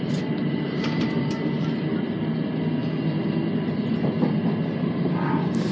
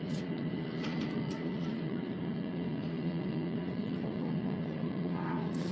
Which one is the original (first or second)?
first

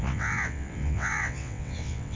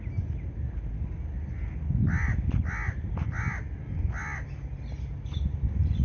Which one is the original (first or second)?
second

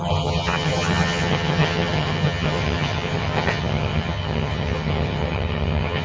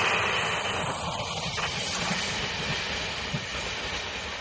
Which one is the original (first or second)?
second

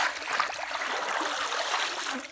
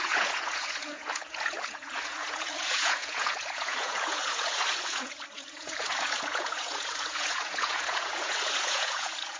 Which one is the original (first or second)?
first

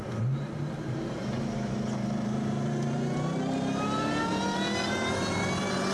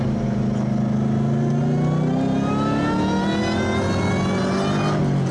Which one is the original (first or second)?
second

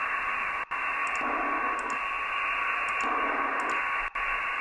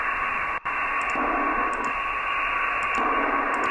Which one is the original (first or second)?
first